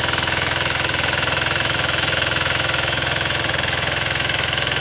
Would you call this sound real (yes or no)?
no